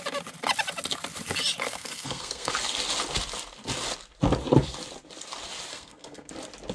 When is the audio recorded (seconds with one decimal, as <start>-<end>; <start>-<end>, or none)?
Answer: 0.0-1.7; 2.5-5.7; 6.3-6.7